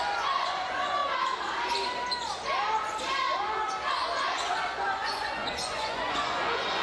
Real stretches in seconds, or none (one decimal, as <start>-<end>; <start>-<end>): 1.0-4.3